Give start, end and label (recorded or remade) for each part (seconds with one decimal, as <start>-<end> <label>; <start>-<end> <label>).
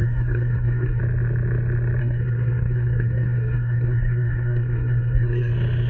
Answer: 0.0-1.0 remade; 1.0-2.0 recorded; 2.0-5.5 remade; 5.5-5.9 recorded